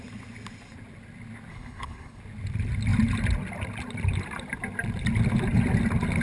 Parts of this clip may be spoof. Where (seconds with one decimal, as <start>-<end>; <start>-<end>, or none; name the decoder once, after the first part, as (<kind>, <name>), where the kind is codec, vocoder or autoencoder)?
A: 1.5-2.2 (codec, HILCodec)